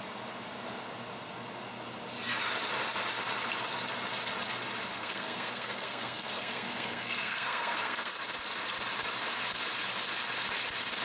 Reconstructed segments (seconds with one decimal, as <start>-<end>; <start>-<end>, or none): 4.9-8.1

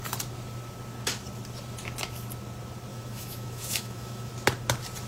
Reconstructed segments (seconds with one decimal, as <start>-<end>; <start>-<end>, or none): 2.9-4.3